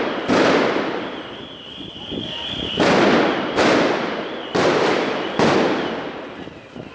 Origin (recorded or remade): recorded